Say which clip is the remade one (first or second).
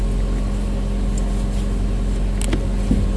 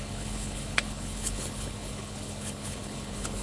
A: second